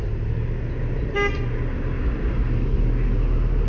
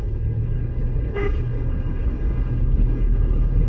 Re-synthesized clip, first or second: second